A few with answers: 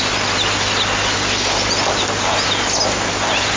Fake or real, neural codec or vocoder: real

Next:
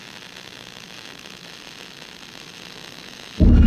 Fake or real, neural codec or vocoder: real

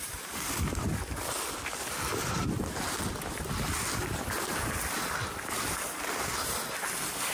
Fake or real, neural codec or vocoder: real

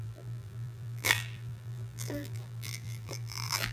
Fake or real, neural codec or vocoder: fake, vocoder, BigVGAN v2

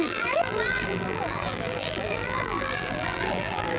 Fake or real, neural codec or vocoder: fake, vocoder, BigVGAN v2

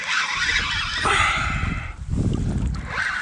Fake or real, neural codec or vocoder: real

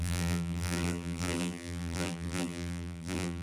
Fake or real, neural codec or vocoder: fake, vocoder, BigVGAN v2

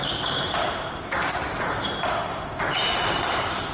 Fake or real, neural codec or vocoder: fake, vocoder, BigVGAN v2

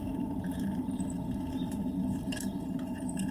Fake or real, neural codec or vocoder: fake, vocoder, BigVGAN v2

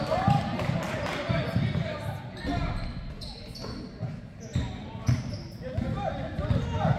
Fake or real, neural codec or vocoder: real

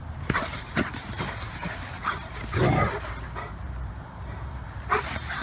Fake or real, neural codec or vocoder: fake, vocoder, BigVGAN v2